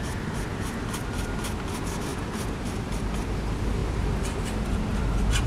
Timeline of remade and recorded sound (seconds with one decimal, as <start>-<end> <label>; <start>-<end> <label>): 0.0-2.1 recorded; 2.1-3.0 remade; 3.0-3.8 recorded; 3.8-5.5 remade